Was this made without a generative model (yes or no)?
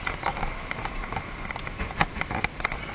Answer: yes